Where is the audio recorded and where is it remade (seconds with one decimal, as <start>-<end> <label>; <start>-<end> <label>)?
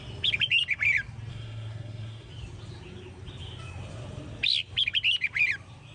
0.0-1.3 recorded; 1.3-2.3 remade; 2.3-5.9 recorded